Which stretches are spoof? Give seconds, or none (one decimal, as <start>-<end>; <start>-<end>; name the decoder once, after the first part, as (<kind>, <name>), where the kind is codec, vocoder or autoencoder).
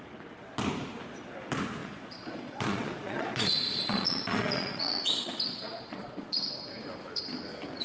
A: 1.8-6.3 (vocoder, Vocos)